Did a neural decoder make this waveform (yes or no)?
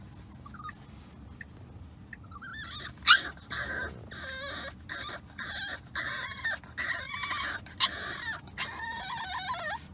no